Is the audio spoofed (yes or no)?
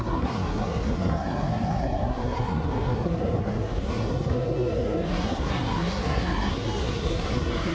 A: yes